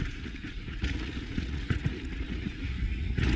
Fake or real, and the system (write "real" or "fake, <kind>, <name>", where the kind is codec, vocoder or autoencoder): fake, vocoder, Vocos